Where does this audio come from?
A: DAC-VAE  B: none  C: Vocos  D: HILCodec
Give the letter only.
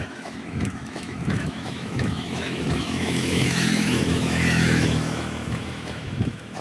A